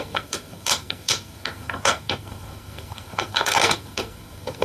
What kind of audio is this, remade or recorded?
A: remade